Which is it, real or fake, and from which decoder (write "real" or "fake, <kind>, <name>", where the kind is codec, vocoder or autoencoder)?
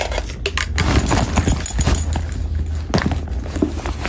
real